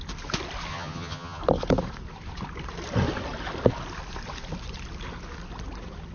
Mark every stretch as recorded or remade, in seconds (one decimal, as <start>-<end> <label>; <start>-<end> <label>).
0.0-0.7 recorded; 0.7-1.4 remade; 1.4-6.1 recorded